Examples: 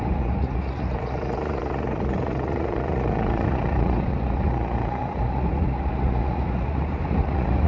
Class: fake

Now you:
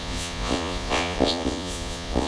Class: fake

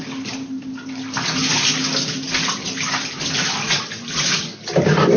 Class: real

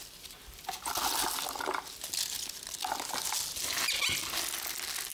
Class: real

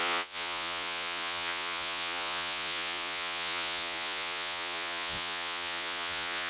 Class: fake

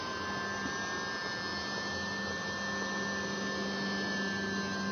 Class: real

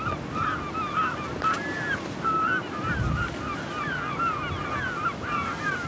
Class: real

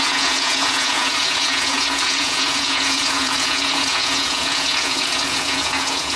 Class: fake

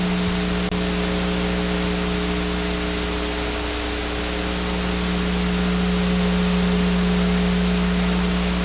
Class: real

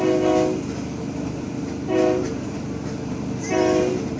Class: real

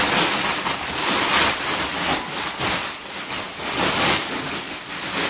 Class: real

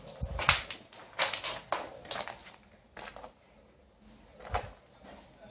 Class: real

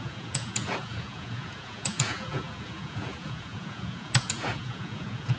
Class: fake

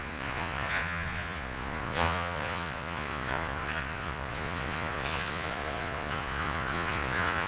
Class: fake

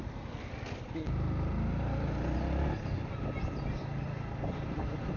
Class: real